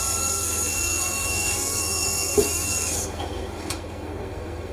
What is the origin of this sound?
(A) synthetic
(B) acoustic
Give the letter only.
A